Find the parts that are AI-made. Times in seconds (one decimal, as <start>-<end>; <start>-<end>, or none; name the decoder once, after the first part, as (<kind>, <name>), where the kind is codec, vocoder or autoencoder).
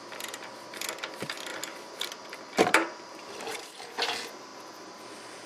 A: 1.5-3.6 (vocoder, BigVGAN v2)